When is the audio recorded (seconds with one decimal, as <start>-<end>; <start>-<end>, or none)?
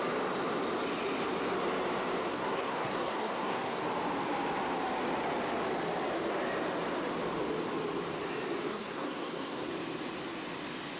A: 0.0-2.3; 3.8-8.7; 9.7-11.0